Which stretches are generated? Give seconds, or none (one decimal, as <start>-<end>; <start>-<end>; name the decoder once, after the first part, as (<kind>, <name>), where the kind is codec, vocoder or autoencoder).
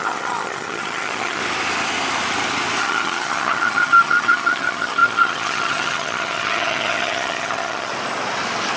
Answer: 0.0-1.4 (vocoder, HiFi-GAN); 2.8-7.9